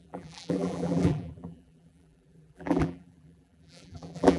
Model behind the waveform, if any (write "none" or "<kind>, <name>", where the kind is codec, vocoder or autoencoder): vocoder, BigVGAN v2